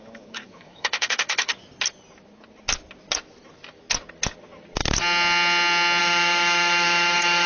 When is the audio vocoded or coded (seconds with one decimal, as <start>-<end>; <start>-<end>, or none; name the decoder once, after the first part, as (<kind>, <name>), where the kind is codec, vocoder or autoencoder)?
0.0-1.5 (autoencoder, DAC-VAE); 6.0-7.5